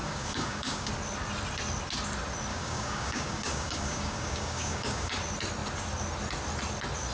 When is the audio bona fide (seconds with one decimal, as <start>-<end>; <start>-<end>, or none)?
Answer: 0.9-2.5; 5.1-7.1